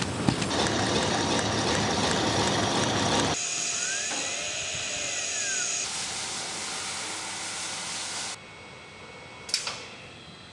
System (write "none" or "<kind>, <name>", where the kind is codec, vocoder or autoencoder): none